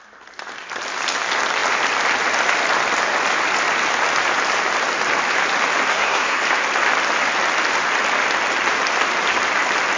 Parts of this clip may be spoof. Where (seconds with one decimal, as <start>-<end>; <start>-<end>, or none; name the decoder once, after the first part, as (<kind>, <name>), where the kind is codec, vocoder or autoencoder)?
5.9-6.4 (codec, SNAC)